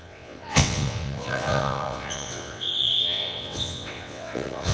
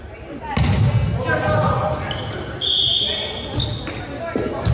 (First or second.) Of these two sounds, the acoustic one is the second